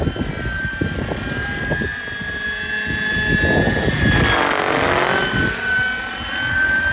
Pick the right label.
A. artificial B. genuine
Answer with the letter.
B